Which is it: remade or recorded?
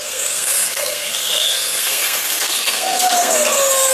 remade